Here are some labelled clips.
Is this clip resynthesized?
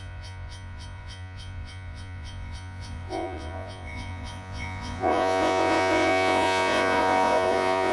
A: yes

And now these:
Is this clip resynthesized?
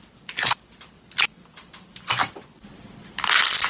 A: yes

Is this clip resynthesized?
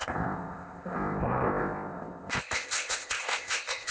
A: yes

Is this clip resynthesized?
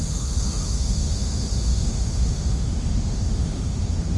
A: yes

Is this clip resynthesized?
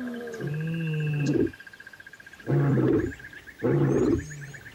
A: no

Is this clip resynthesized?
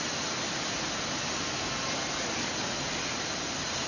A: no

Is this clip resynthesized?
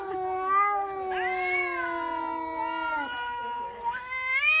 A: no